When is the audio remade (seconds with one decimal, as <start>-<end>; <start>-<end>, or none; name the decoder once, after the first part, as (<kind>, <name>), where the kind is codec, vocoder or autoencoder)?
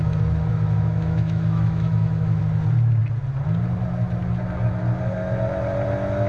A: 0.5-2.4 (autoencoder, DAC-VAE)